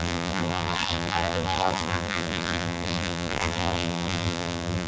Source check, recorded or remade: remade